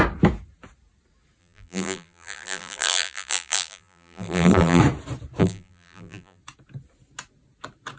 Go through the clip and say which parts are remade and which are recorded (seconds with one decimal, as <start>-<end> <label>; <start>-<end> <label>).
0.0-1.4 recorded; 1.4-4.8 remade; 4.8-5.4 recorded; 5.4-6.4 remade; 6.4-8.0 recorded